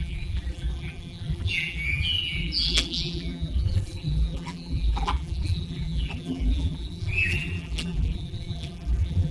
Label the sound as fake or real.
fake